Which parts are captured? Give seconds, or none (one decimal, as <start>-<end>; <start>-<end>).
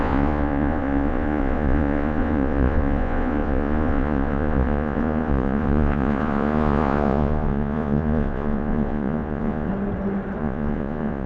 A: 9.7-10.4